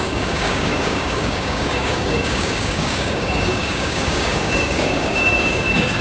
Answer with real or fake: fake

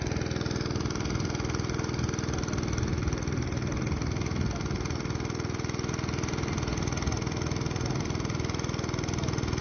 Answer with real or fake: real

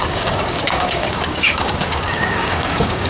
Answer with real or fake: fake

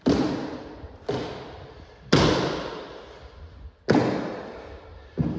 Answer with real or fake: real